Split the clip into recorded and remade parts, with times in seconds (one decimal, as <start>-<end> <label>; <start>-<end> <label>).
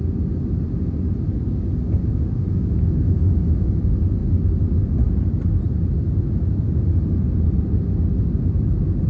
0.0-2.0 recorded; 2.0-3.7 remade; 3.7-9.1 recorded